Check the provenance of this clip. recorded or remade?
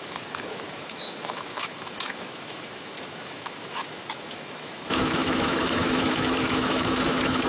remade